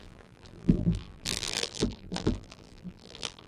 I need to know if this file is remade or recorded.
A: remade